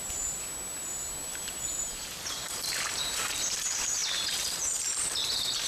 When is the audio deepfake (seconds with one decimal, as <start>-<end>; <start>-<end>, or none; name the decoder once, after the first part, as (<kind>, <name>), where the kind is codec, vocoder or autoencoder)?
1.3-3.0 (vocoder, BigVGAN v2); 4.0-5.7